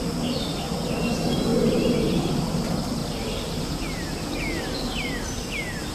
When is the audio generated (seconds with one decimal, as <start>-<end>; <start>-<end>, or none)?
none